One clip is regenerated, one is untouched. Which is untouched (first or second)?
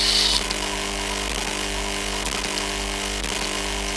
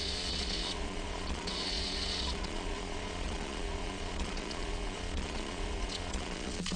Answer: first